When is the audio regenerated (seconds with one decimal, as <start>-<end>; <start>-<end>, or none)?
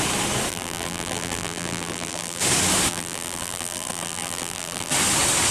0.5-2.4; 2.9-4.9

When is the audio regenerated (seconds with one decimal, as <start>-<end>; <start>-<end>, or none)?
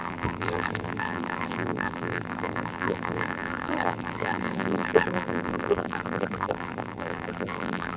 0.0-8.0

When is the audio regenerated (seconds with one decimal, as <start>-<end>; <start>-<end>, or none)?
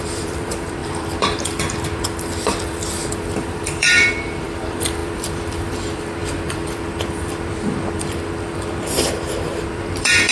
0.0-10.3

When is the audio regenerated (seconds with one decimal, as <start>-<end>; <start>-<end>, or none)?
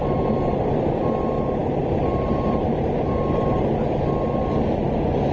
0.0-0.5; 1.6-3.7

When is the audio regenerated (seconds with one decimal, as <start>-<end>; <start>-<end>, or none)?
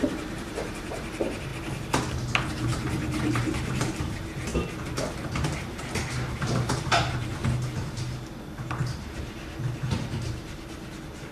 0.0-1.5; 2.5-4.5; 5.5-7.4; 8.5-11.3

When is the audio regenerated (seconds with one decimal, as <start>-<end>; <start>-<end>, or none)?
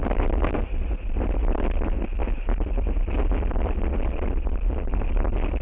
0.0-0.6